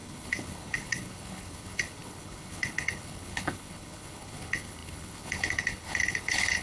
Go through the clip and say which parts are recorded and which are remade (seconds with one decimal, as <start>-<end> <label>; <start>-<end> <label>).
0.0-6.6 remade